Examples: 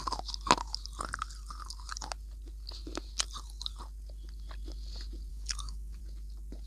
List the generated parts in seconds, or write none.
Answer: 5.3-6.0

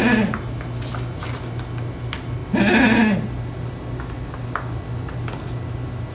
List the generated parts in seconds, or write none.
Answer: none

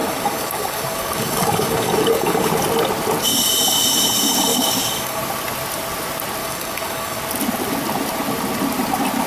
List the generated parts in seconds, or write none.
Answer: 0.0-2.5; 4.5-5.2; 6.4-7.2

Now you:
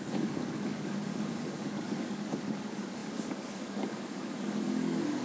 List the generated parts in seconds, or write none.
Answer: 0.0-5.2